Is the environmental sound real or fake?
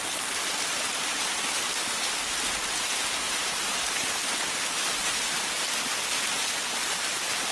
real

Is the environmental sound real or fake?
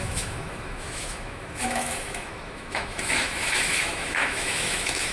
fake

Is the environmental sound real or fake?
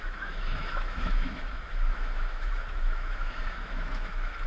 fake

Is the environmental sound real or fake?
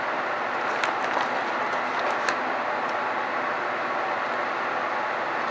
real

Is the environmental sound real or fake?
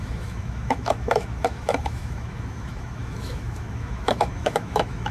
fake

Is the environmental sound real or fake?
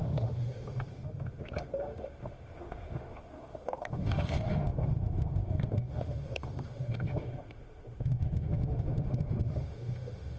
fake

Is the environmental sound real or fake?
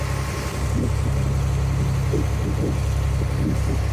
real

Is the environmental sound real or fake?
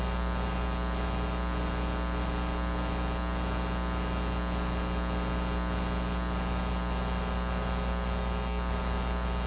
real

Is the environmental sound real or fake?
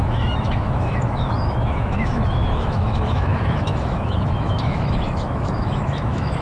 fake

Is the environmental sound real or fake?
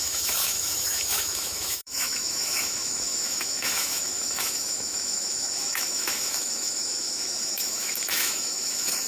fake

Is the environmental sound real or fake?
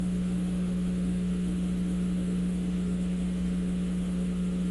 fake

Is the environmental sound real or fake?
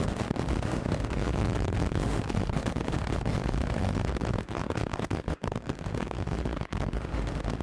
fake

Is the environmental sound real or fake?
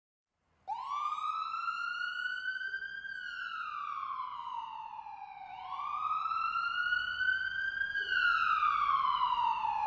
real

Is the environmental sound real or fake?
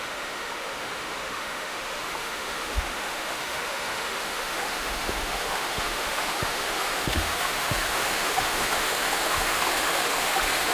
fake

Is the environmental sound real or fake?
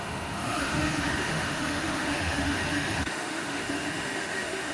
fake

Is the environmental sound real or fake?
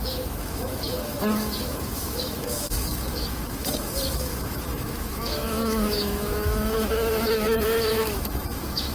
fake